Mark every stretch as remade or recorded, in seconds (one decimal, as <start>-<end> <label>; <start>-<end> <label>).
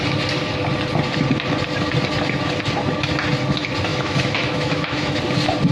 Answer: 0.0-3.9 recorded; 3.9-5.2 remade; 5.2-5.7 recorded